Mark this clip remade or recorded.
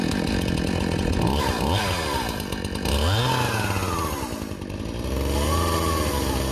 recorded